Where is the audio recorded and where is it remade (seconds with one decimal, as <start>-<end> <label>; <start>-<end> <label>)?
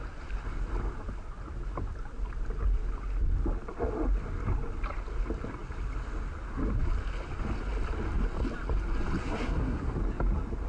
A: 0.0-9.2 recorded; 9.2-10.0 remade; 10.0-10.7 recorded